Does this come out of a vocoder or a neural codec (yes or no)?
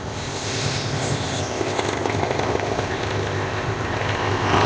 yes